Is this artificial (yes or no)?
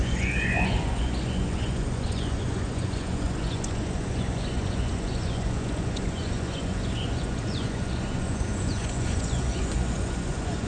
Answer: yes